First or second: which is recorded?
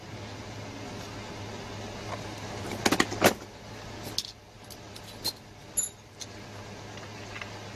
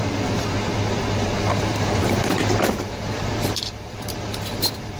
first